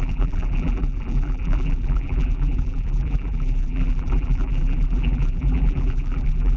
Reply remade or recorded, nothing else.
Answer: remade